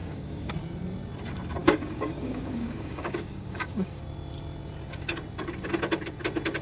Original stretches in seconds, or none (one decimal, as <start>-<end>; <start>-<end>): 0.5-1.6; 4.0-6.6